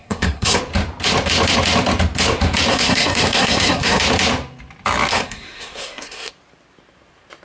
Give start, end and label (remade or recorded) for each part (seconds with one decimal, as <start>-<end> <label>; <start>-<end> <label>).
0.0-0.6 remade; 0.6-2.7 recorded; 2.7-4.0 remade; 4.0-5.1 recorded; 5.1-6.3 remade; 6.3-7.4 recorded